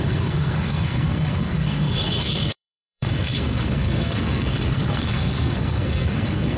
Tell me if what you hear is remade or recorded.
remade